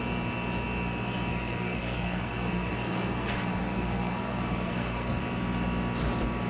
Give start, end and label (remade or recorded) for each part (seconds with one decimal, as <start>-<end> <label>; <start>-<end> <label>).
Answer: 0.0-1.3 recorded; 1.3-5.2 remade; 5.2-6.5 recorded

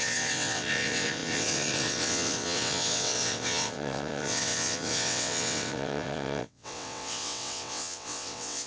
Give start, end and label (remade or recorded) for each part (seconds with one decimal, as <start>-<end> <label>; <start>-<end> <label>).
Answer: 0.0-8.7 remade

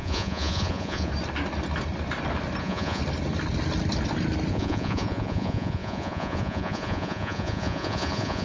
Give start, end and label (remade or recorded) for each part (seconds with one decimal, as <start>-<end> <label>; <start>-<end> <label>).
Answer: 0.0-1.1 remade; 1.1-2.6 recorded; 2.6-3.0 remade; 3.0-4.5 recorded; 4.5-8.4 remade